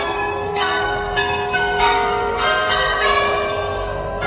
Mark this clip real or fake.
fake